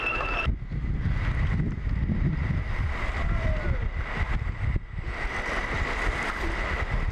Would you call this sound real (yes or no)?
yes